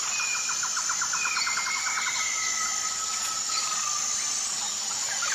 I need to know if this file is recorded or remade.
recorded